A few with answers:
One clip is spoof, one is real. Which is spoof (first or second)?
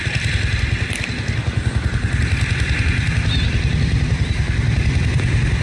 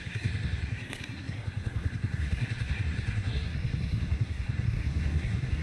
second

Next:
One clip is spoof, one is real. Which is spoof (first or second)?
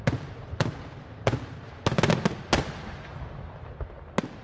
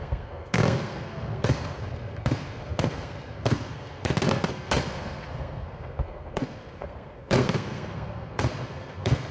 second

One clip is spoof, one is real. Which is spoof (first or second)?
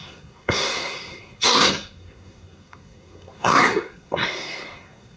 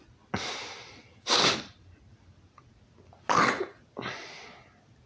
first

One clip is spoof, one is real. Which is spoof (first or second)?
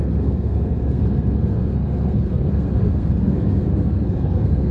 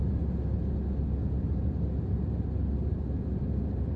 first